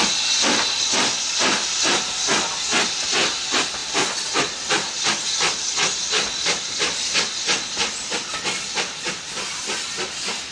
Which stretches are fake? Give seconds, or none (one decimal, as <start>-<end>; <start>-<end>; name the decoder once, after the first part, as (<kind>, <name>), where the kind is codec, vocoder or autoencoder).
none